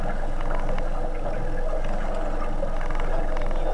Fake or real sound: real